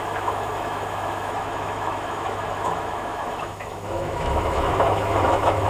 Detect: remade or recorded remade